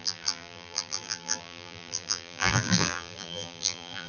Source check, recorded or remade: remade